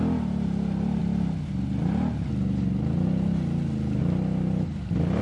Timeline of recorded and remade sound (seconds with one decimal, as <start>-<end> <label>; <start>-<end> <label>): 0.0-5.2 recorded